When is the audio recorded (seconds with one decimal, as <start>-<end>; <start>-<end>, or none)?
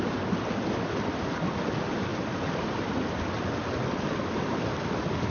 0.0-5.3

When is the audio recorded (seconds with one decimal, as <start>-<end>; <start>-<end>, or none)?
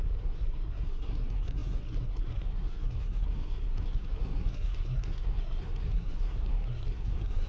none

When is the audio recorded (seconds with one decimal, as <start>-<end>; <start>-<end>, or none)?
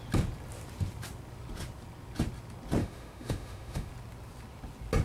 0.0-2.8; 3.9-5.0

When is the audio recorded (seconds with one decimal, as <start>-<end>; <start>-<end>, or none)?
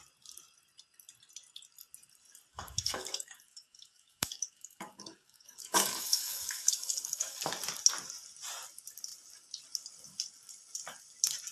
0.0-2.5; 7.5-11.5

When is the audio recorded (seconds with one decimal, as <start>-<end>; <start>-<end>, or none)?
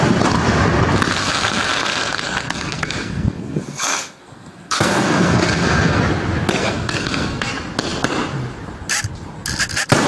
0.0-1.2; 6.0-6.6; 7.5-10.1